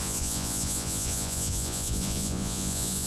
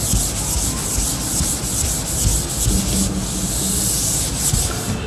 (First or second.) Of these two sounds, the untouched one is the second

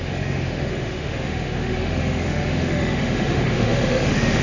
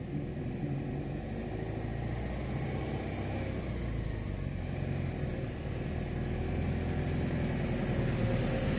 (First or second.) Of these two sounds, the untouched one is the second